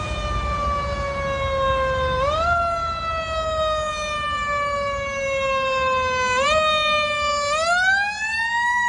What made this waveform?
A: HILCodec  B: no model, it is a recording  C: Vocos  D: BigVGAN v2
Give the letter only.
B